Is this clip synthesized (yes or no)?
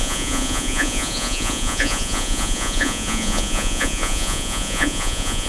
yes